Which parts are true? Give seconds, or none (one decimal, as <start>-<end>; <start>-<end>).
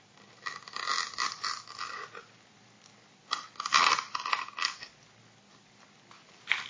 0.0-6.7